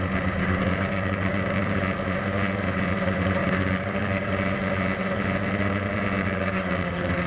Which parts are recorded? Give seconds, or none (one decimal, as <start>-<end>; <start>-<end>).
0.0-0.4; 1.7-3.4; 4.3-6.2